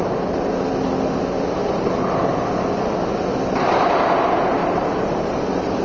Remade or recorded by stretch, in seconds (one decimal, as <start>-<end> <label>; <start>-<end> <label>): 0.0-4.6 recorded; 4.6-5.8 remade